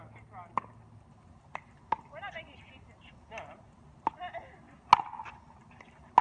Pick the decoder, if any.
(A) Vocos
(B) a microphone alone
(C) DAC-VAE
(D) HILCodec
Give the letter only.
B